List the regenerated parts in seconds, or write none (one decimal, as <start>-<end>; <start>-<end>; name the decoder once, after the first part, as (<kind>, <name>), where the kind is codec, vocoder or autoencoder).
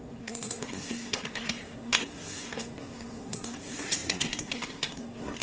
0.0-5.4 (codec, SNAC)